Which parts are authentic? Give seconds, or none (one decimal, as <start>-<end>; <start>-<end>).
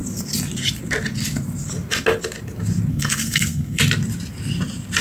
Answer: 0.0-2.9; 3.8-5.0